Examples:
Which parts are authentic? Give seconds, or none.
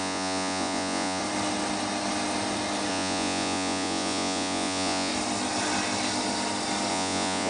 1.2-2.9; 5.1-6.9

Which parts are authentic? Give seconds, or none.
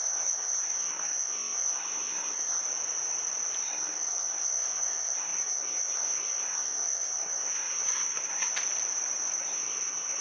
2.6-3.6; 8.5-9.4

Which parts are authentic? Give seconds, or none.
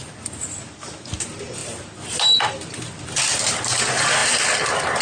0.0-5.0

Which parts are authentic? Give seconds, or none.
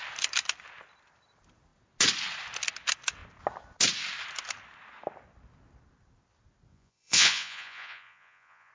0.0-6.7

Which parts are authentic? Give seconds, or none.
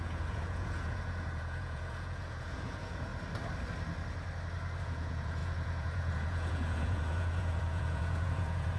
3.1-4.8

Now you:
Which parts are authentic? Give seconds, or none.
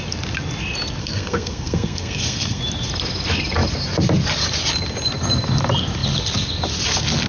0.0-1.0; 2.6-7.3